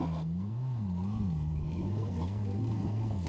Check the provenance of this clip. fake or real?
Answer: fake